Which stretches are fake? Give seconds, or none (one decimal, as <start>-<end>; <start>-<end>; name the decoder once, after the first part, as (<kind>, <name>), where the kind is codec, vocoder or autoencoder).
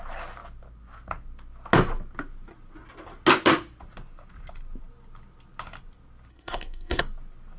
6.3-7.0 (codec, SNAC)